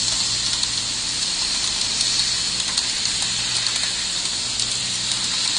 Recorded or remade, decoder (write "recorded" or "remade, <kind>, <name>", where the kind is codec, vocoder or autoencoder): recorded